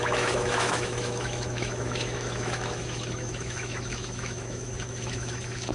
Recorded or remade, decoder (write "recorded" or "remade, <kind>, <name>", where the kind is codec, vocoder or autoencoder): remade, autoencoder, DAC-VAE